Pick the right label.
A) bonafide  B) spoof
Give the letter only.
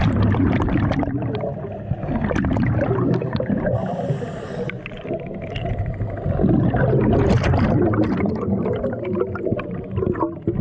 A